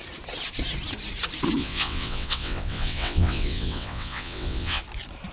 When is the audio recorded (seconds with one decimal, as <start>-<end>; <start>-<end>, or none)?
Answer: 0.0-1.6; 4.8-5.3